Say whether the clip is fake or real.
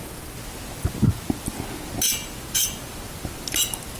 real